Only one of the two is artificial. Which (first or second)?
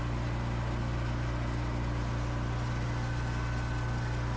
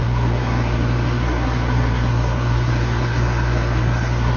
second